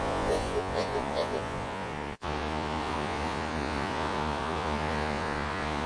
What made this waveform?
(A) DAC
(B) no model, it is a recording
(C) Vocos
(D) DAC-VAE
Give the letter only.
C